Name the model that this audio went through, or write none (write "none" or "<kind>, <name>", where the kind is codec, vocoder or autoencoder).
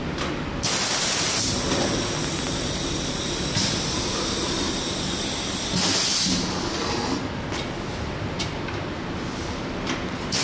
none